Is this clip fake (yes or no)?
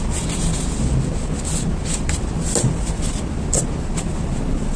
no